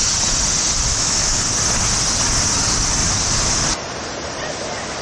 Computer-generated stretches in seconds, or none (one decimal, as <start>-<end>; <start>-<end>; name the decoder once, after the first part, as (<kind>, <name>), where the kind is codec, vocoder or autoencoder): 0.9-1.4 (autoencoder, DAC-VAE)

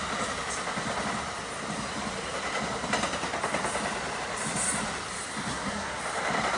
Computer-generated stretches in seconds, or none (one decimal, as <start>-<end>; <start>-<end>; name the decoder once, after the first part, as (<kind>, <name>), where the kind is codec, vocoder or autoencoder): 5.5-6.0 (codec, SNAC)

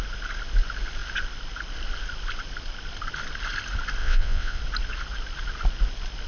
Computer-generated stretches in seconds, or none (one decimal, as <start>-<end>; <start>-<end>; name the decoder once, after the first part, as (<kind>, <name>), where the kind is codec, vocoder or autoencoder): 4.0-4.6 (vocoder, WaveNeXt)